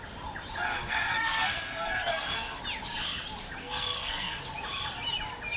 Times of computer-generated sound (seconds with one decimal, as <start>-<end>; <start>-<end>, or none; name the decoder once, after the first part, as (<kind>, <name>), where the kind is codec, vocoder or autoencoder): 0.7-2.6 (codec, SNAC); 3.6-4.4